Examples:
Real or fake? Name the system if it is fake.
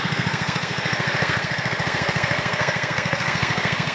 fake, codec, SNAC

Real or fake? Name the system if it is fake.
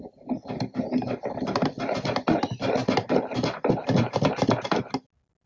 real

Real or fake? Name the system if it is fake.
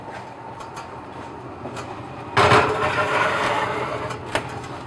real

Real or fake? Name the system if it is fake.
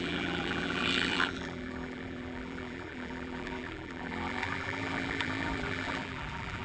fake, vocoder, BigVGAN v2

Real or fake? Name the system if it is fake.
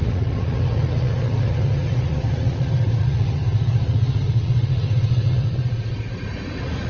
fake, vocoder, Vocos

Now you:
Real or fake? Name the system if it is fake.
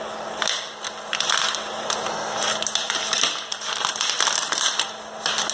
real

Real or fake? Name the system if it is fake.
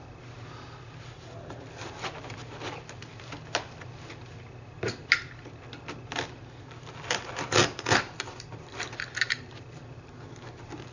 real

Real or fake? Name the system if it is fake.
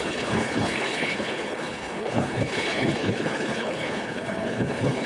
fake, codec, HILCodec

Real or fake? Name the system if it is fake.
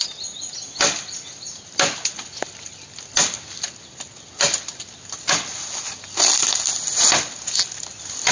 real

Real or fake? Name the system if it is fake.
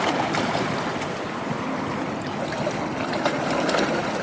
real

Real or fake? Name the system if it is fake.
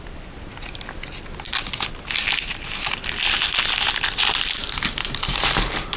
real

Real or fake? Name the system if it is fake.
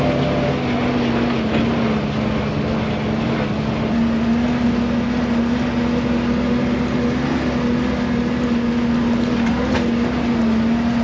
real